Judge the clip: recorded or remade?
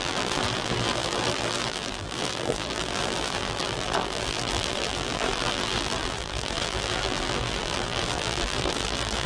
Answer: remade